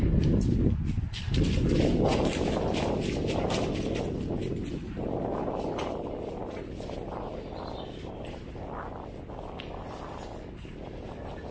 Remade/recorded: recorded